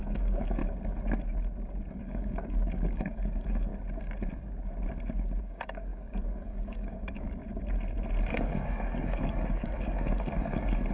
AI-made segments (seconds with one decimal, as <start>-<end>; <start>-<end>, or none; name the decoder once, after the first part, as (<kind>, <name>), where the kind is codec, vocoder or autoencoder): 0.0-0.6 (codec, DAC); 1.9-3.7; 5.4-7.4; 8.3-10.9